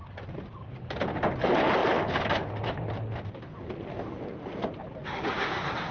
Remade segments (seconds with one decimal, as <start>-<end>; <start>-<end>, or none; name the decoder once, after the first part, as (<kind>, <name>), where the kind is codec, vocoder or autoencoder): 5.0-5.9 (codec, DAC)